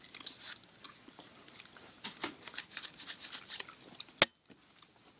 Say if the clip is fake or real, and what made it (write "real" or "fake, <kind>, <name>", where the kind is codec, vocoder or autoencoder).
real